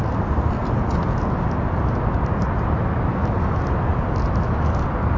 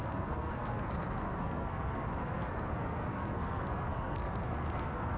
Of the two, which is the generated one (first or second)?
second